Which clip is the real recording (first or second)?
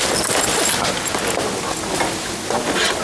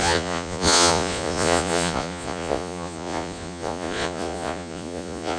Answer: first